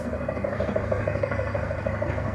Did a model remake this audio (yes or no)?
yes